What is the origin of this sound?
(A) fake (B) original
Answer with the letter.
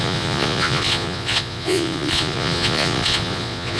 A